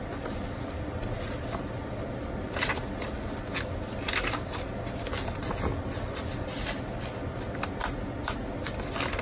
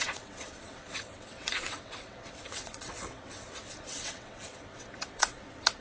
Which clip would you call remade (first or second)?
second